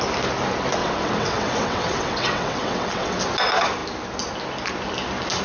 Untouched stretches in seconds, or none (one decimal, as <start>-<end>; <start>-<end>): 0.0-0.8; 3.2-5.4